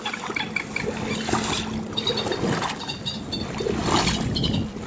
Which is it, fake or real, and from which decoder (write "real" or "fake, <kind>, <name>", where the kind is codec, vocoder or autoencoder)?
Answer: real